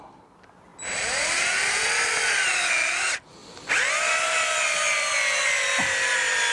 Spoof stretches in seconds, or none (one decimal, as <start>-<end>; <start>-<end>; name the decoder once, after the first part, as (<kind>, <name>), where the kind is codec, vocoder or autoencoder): none